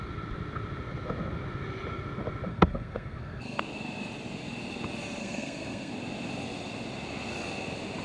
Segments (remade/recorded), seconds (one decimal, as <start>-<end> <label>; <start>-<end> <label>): 0.0-2.5 recorded; 2.5-3.6 remade; 3.6-5.2 recorded; 5.2-5.9 remade; 5.9-8.0 recorded